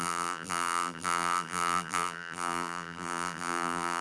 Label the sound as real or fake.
fake